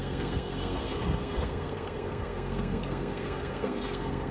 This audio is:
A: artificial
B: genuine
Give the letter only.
A